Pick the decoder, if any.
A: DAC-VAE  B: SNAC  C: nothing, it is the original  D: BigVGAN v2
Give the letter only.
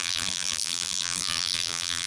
D